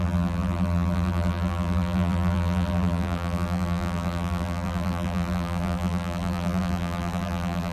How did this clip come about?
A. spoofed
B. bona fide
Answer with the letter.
A